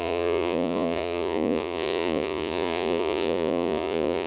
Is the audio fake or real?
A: fake